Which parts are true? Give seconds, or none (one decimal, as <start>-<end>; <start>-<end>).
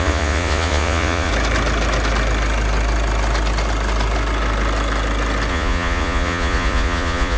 1.3-5.5